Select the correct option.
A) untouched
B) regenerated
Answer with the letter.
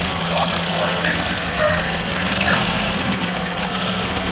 B